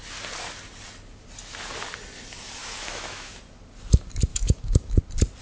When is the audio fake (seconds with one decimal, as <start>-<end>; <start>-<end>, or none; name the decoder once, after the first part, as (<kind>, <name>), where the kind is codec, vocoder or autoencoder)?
2.6-3.4 (autoencoder, DAC-VAE); 4.3-5.0